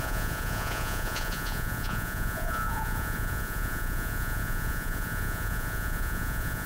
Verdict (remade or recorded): remade